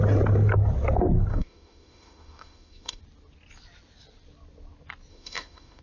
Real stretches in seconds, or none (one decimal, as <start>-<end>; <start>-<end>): 0.0-1.3; 3.0-5.1